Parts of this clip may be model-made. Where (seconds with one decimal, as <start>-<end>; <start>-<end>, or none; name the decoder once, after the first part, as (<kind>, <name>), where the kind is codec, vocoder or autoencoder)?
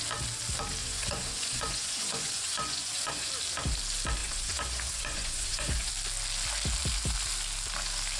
0.8-3.3 (vocoder, Vocos); 4.2-5.9